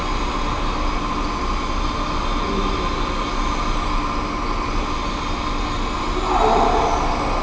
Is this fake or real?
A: real